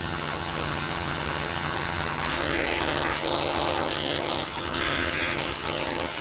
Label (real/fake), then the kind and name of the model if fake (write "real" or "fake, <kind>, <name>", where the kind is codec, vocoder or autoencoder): fake, vocoder, HiFi-GAN